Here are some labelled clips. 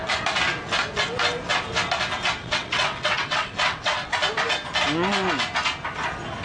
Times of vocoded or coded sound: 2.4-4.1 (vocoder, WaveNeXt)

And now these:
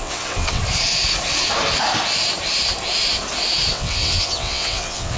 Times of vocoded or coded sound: 0.0-0.6 (vocoder, WaveNeXt); 3.7-5.2

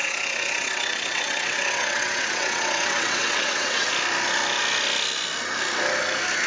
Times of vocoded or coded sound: 0.0-3.9 (vocoder, WaveNeXt)

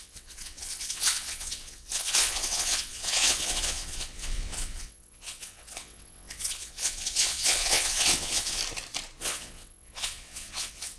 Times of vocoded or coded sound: 0.0-8.6 (vocoder, WaveNeXt); 9.2-11.0

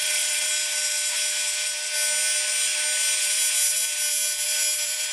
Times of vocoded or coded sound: 0.0-0.5 (vocoder, WaveNeXt)

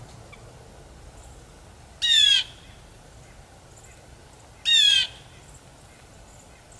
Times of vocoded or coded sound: none